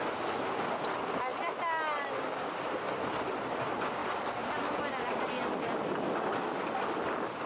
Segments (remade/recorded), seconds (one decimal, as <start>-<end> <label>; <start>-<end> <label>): 0.0-7.5 recorded